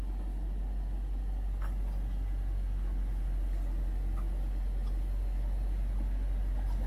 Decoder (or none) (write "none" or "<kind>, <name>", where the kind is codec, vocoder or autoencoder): none